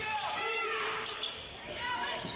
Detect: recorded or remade remade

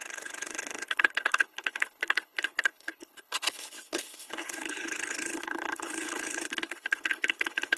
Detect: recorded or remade remade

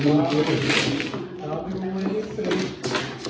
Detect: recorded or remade recorded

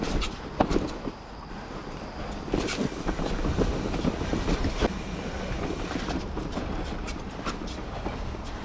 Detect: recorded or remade recorded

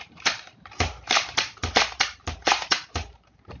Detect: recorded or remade remade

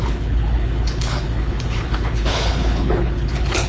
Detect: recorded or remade remade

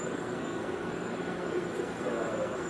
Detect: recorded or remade remade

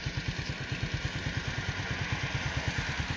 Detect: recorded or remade recorded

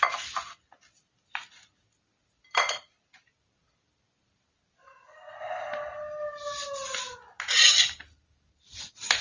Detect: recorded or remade recorded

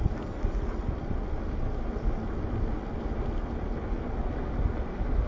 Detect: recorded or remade recorded